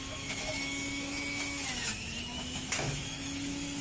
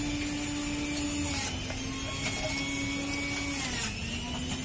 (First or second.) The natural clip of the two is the second